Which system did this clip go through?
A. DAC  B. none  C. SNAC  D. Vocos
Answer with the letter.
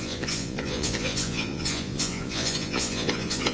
D